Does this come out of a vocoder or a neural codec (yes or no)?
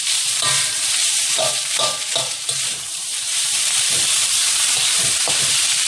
yes